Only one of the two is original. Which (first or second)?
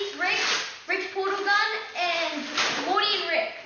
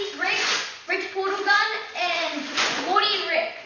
first